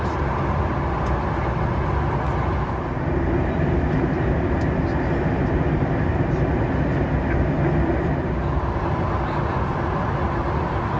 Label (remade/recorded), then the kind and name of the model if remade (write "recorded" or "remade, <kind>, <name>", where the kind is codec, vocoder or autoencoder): recorded